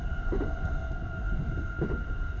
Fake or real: real